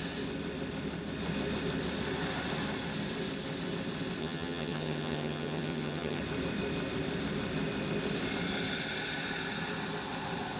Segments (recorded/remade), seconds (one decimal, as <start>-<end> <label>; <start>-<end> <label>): 0.0-4.2 recorded; 4.2-6.2 remade; 6.2-10.6 recorded